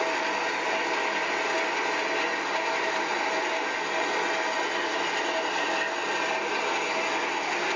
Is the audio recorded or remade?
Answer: recorded